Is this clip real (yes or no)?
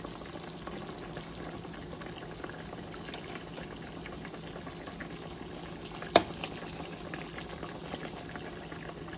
yes